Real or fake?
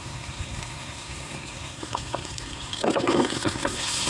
fake